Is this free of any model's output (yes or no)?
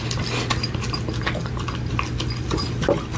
yes